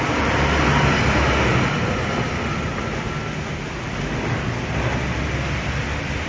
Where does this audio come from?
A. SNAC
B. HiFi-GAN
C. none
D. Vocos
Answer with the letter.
C